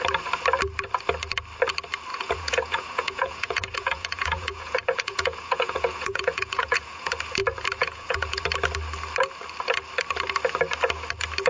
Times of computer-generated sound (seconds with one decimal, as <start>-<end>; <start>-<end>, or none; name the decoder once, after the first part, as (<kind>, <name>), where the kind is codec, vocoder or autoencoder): 2.1-7.1 (vocoder, Vocos); 7.8-8.4